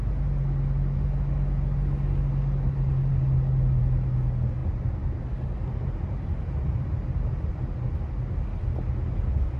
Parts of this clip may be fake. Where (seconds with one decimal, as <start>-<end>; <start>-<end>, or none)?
none

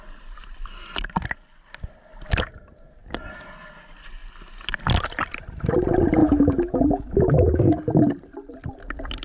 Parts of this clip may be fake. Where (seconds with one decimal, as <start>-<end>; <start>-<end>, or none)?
6.2-7.6